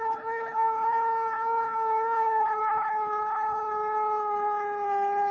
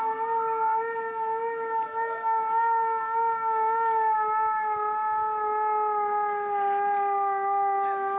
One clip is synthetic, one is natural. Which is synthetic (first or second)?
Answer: first